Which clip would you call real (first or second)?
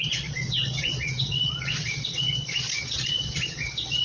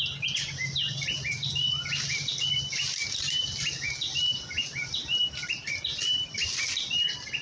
second